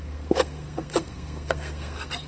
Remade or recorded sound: remade